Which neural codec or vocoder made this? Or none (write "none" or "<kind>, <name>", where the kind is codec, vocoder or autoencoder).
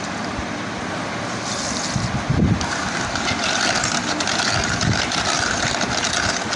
none